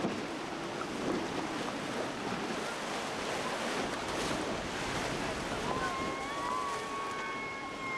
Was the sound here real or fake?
real